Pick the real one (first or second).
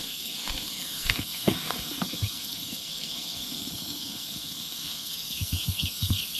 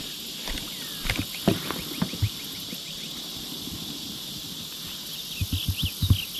second